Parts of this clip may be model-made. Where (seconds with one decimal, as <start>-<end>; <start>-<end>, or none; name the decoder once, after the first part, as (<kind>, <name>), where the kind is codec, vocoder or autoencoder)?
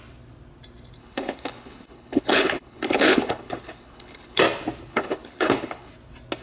1.0-4.4 (codec, HILCodec); 4.9-5.9